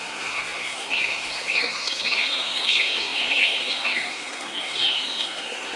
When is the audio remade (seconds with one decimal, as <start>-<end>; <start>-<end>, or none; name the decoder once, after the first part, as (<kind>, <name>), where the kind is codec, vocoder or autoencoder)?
0.0-5.8 (codec, SNAC)

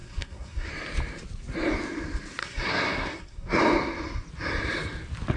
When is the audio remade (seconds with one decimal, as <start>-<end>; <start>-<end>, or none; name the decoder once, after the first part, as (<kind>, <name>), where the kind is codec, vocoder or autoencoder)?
0.0-0.7 (codec, SNAC); 2.4-3.6